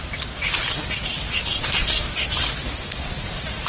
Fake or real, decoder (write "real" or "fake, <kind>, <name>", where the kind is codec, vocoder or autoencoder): real